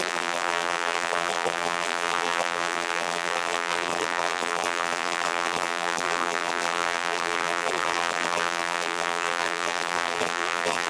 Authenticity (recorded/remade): remade